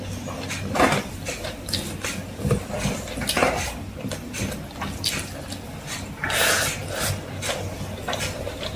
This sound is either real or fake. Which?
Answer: real